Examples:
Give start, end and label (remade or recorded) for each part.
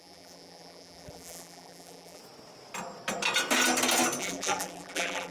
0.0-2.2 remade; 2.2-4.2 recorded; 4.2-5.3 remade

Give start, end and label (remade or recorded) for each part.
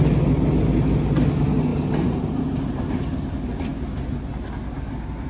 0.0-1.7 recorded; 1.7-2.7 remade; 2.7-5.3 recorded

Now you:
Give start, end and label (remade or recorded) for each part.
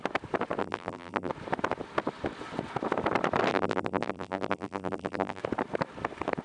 0.0-0.6 recorded; 0.6-1.3 remade; 1.3-3.5 recorded; 3.5-5.4 remade; 5.4-6.4 recorded